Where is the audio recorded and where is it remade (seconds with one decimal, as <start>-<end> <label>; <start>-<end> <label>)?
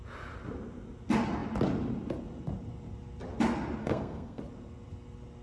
0.0-3.8 recorded; 3.8-4.4 remade; 4.4-5.4 recorded